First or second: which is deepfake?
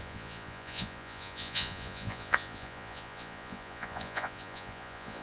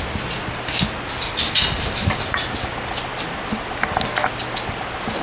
first